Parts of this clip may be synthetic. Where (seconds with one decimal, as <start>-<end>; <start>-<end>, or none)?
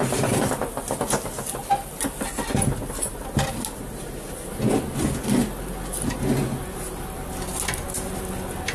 none